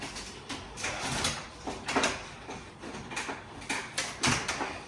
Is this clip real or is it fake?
fake